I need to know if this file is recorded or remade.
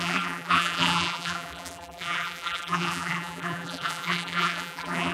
remade